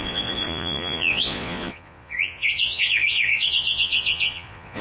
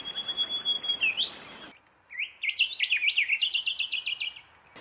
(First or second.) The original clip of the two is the second